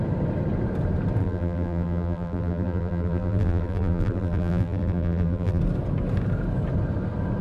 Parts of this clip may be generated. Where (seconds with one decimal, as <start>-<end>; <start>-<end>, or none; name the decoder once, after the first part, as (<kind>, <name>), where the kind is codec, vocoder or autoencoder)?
1.2-5.6 (vocoder, BigVGAN v2)